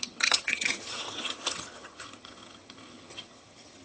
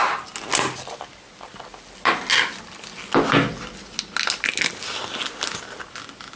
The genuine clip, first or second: second